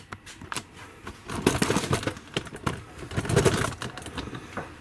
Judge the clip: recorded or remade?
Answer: remade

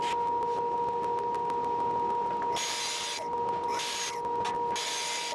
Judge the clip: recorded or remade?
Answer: recorded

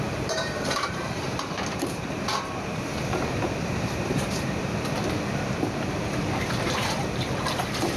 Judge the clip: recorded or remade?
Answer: remade